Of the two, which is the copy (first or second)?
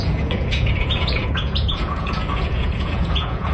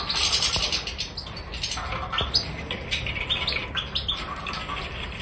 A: first